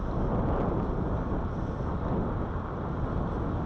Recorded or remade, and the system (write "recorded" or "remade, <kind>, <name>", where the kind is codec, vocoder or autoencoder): recorded